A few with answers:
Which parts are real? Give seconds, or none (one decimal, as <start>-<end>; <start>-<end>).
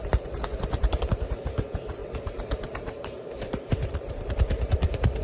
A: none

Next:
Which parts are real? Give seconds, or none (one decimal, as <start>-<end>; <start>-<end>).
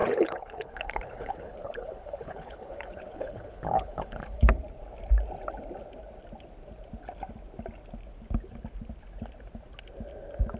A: 4.6-10.6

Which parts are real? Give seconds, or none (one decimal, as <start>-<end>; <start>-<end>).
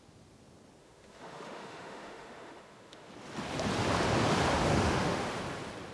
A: 0.0-0.8; 3.1-4.7; 5.2-5.9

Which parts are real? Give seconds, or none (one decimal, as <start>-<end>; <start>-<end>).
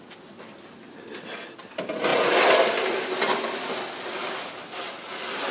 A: 0.0-5.5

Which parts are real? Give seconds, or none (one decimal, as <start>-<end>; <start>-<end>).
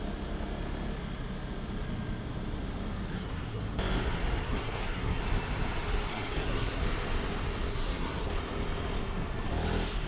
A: 0.0-3.1; 3.6-4.4; 5.2-6.1; 6.8-7.7; 8.3-10.1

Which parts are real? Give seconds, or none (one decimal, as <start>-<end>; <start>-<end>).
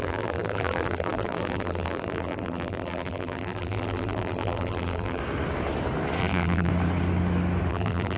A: 5.2-6.2; 6.7-7.7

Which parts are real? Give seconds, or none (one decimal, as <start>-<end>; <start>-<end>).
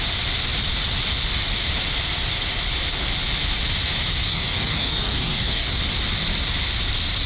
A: 0.0-4.3; 5.7-7.3